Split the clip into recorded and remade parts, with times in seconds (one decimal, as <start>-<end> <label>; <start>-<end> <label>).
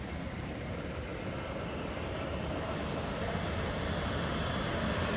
0.0-5.2 recorded